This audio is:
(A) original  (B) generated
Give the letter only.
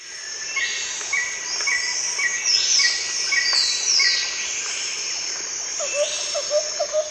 A